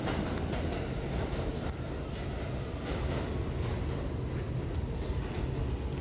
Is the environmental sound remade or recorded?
recorded